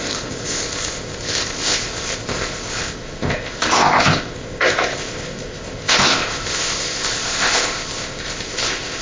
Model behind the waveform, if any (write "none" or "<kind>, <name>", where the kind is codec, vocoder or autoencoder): codec, ZipCodec